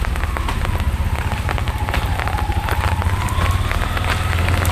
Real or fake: real